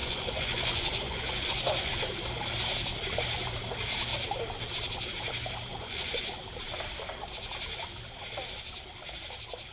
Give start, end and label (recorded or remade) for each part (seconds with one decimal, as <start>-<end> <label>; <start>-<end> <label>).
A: 0.0-1.9 remade; 1.9-5.7 recorded; 5.7-6.3 remade; 6.3-9.7 recorded